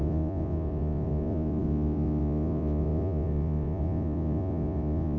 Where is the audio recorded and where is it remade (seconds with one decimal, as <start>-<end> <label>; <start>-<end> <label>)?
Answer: 0.0-5.2 remade